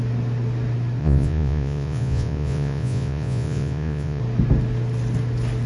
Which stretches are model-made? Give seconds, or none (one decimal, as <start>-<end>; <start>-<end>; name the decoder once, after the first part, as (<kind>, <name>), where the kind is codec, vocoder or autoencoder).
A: 1.0-4.2 (vocoder, Vocos)